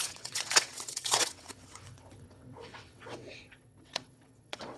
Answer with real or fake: fake